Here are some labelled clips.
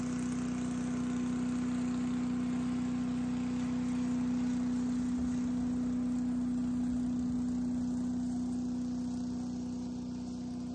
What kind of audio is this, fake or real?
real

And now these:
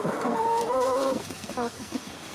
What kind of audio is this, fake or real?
fake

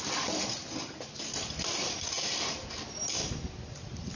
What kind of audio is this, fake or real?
real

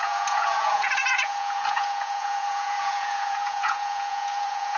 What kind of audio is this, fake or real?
fake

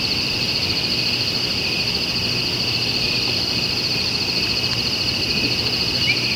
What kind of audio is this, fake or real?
real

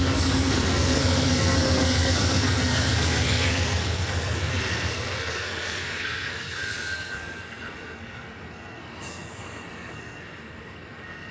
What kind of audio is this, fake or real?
fake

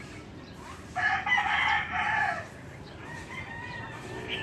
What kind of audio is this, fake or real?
real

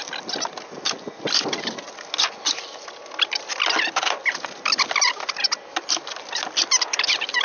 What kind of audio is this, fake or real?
real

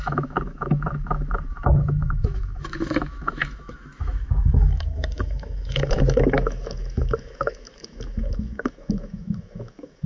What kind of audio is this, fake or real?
fake